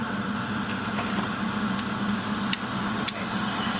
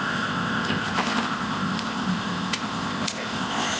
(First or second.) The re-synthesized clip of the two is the second